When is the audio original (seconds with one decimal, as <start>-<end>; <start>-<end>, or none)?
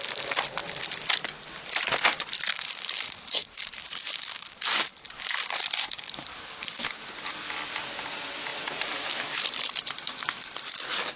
0.0-2.5; 6.9-11.2